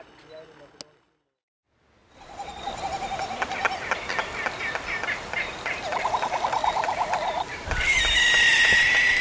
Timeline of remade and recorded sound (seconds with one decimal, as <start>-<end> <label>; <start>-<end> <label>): 0.0-2.0 recorded; 2.0-2.7 remade; 2.7-9.2 recorded